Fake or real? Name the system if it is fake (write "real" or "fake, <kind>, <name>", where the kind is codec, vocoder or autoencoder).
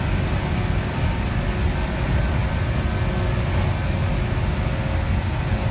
real